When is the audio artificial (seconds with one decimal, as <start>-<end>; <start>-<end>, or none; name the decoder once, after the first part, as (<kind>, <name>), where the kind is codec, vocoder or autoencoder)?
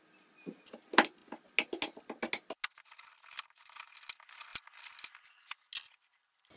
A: none